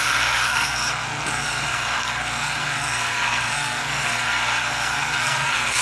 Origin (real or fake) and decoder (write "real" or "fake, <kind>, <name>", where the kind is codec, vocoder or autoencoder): fake, codec, SNAC